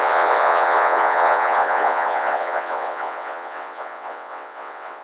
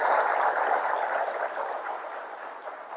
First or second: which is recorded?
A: second